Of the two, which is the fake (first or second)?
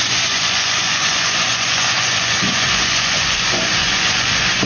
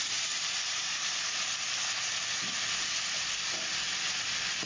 first